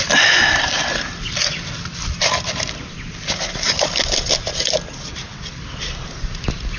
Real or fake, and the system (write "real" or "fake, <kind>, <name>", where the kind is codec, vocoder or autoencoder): real